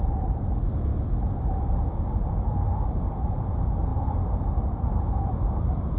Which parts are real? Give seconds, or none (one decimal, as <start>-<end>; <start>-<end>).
0.0-6.0

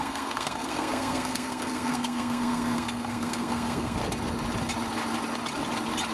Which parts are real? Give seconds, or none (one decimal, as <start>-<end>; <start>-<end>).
4.0-6.1

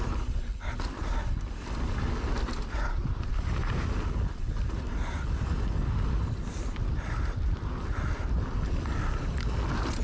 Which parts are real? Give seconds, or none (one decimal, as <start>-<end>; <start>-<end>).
0.0-10.0

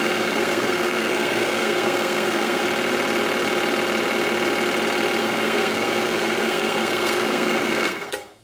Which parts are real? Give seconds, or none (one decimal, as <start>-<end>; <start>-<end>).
2.6-5.2

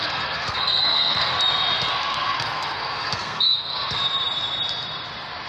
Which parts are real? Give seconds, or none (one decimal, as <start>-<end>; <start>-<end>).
1.3-1.9; 4.0-5.5